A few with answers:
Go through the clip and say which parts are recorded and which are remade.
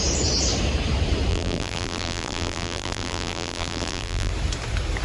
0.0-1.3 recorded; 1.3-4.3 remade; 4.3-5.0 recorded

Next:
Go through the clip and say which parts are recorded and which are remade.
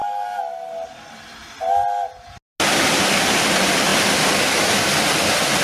0.0-5.6 recorded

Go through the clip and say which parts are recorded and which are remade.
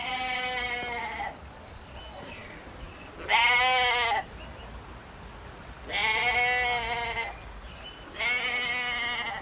0.0-9.4 recorded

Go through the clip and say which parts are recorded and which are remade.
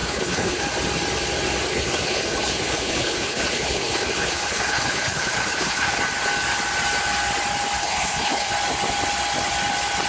0.0-0.6 remade; 0.6-1.7 recorded; 1.7-6.0 remade; 6.0-7.8 recorded; 7.8-8.5 remade; 8.5-10.1 recorded